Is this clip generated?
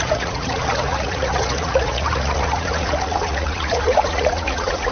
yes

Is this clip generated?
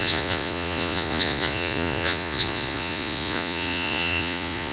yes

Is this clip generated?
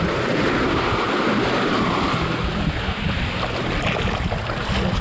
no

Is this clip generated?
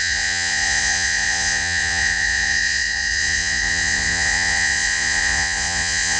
yes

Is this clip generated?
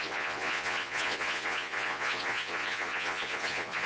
yes